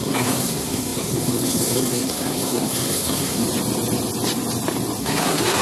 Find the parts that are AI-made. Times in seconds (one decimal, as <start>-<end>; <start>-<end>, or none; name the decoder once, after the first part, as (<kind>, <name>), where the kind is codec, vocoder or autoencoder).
0.0-3.4 (codec, SNAC); 5.0-5.6